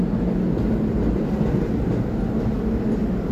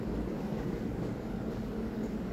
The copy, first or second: second